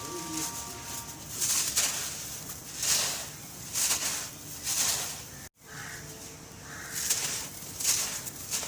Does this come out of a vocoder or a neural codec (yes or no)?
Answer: no